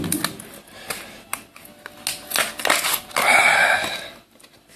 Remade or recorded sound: recorded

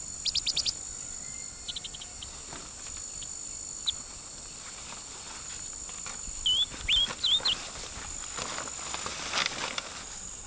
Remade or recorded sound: recorded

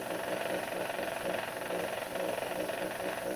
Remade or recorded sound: remade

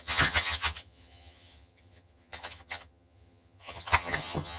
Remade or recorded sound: remade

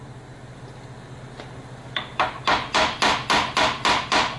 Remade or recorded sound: recorded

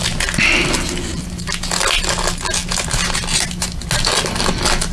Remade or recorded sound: recorded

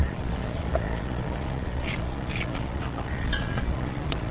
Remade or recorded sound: remade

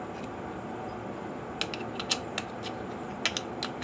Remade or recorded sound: recorded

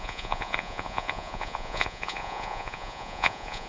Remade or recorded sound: remade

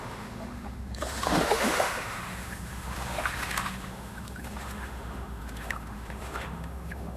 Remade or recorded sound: remade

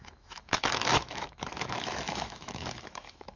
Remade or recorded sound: remade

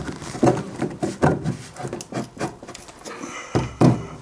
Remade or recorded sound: recorded